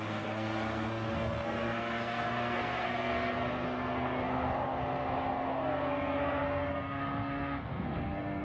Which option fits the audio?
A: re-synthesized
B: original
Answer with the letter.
A